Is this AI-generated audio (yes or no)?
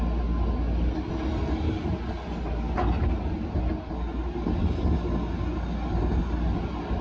no